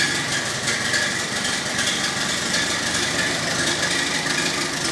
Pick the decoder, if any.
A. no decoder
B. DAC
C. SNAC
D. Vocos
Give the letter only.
A